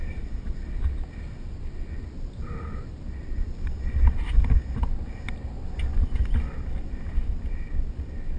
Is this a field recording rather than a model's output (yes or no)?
yes